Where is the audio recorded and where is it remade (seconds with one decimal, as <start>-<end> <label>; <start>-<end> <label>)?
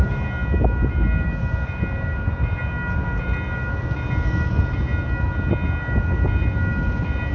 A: 0.0-7.3 recorded